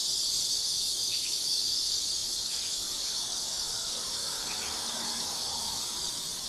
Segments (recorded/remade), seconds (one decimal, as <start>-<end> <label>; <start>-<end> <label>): 0.0-0.5 recorded; 0.5-6.5 remade